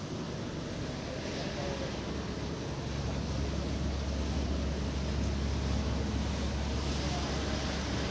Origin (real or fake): real